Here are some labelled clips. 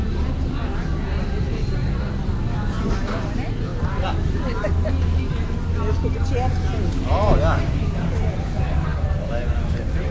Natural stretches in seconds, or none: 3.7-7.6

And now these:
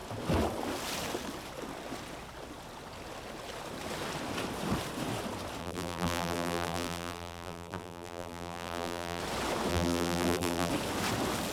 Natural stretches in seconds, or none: 0.0-5.6; 9.2-9.7; 10.7-11.5

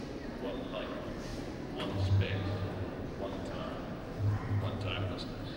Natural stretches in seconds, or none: none

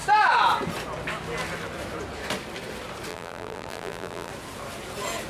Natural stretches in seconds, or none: 0.0-3.1; 4.3-5.3

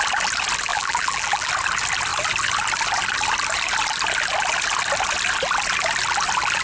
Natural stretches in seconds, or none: 0.0-0.7; 1.5-6.6

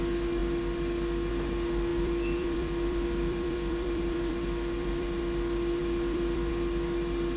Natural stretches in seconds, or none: 0.0-1.9; 5.2-5.8; 6.5-7.4

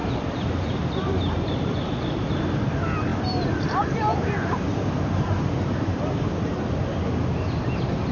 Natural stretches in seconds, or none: 2.4-3.1; 7.0-8.1